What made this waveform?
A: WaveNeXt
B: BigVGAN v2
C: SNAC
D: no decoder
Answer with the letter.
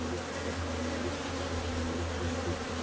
D